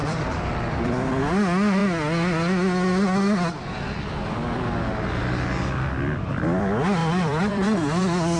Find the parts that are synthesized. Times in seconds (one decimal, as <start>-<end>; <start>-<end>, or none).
0.0-0.9; 7.0-8.4